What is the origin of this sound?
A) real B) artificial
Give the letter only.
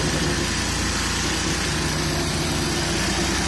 A